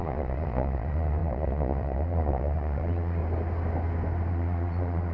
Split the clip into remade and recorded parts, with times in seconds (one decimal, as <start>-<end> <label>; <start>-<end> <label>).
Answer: 0.0-3.2 remade; 3.2-4.3 recorded; 4.3-5.1 remade